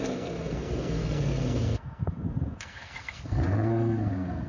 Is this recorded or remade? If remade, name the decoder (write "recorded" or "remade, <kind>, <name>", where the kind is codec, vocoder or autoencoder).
remade, codec, SNAC